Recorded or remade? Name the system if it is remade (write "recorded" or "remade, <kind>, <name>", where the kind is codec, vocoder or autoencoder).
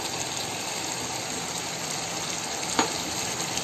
recorded